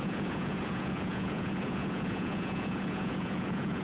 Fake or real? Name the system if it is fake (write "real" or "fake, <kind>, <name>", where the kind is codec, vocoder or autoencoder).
fake, vocoder, Vocos